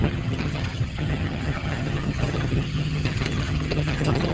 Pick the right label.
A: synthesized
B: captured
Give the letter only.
A